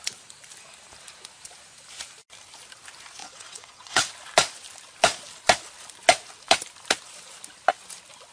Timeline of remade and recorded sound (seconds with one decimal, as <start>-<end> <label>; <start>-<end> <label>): 0.0-3.2 recorded; 3.2-4.1 remade; 4.1-8.3 recorded